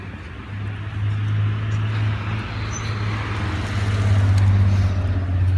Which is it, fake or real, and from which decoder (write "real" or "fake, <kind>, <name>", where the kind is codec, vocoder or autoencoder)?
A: real